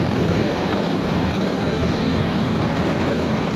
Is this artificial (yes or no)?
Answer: yes